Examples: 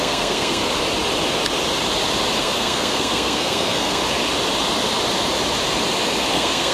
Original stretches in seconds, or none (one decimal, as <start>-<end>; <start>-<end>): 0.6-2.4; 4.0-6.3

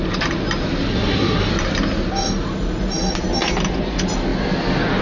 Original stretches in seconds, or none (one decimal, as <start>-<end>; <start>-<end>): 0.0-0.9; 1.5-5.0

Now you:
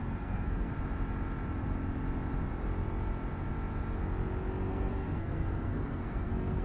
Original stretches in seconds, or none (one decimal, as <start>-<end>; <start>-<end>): 0.7-4.7